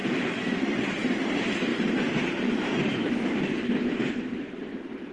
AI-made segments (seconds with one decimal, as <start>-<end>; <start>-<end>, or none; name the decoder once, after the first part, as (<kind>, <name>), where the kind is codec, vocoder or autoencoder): 1.7-5.1 (vocoder, BigVGAN v2)